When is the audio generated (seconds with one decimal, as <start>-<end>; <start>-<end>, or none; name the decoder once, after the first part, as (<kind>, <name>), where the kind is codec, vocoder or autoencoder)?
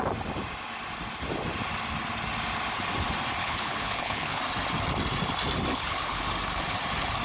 3.4-4.4 (codec, HILCodec); 5.7-6.2